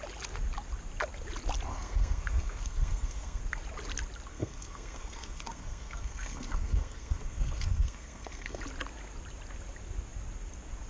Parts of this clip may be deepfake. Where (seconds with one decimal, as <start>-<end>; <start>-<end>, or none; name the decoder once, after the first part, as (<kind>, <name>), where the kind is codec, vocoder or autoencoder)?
1.7-3.4 (codec, SNAC); 4.3-8.6